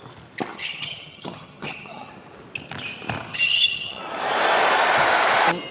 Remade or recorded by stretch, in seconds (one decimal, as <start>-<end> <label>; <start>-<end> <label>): 0.0-0.5 recorded; 0.5-2.1 remade; 2.1-3.3 recorded; 3.3-4.0 remade; 4.0-5.7 recorded